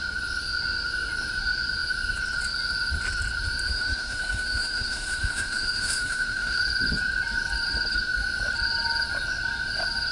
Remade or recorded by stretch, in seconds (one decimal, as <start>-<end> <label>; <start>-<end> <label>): 0.0-3.7 recorded; 3.7-6.6 remade; 6.6-10.1 recorded